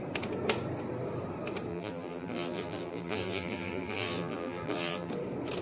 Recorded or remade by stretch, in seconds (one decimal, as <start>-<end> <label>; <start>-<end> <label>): 0.0-1.7 recorded; 1.7-5.1 remade; 5.1-5.6 recorded